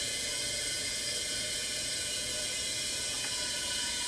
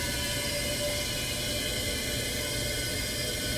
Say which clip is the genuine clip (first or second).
second